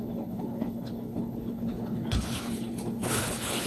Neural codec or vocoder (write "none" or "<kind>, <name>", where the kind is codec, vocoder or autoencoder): codec, HILCodec